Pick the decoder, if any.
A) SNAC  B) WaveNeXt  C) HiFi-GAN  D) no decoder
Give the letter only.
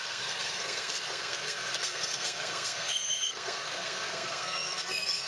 A